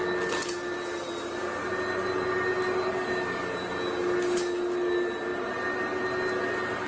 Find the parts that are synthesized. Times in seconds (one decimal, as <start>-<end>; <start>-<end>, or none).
none

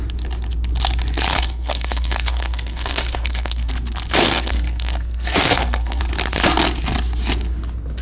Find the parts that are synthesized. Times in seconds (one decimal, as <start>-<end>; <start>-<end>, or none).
1.3-3.7; 4.2-6.0

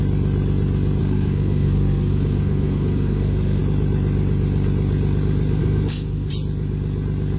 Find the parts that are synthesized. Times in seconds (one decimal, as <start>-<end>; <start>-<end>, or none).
1.0-3.6; 5.6-6.3

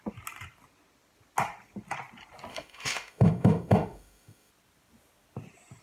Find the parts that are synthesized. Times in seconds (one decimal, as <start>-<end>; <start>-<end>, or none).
2.5-4.5

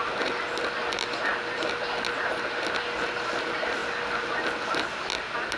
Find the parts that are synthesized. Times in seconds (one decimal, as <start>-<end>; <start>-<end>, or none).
none